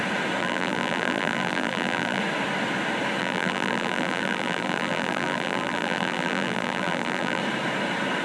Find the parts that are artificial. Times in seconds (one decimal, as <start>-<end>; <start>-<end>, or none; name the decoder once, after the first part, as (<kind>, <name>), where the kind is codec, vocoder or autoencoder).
0.4-2.2 (vocoder, BigVGAN v2); 3.2-7.4